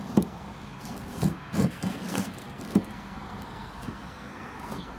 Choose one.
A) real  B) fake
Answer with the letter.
B